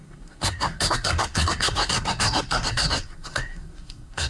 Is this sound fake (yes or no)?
yes